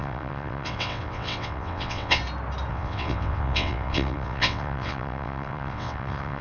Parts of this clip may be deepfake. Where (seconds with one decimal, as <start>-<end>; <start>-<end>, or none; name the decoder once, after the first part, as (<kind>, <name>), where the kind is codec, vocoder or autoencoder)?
0.0-2.2 (vocoder, WaveNeXt); 2.7-6.4